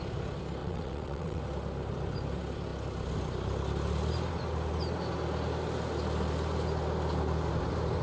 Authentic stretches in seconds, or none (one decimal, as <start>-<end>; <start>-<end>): 0.0-0.6; 1.4-8.0